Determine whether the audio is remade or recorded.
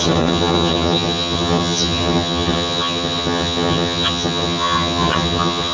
remade